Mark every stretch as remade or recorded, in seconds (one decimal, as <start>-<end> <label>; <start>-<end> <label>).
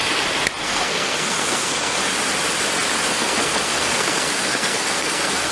0.0-0.6 recorded; 0.6-2.0 remade; 2.0-3.1 recorded; 3.1-5.5 remade